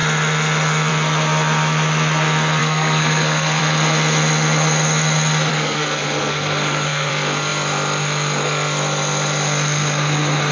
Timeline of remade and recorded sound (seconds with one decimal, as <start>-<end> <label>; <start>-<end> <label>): 0.0-2.6 recorded; 2.6-3.6 remade; 3.6-5.5 recorded; 5.5-7.1 remade; 7.1-10.5 recorded